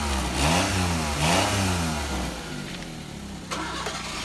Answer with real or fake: real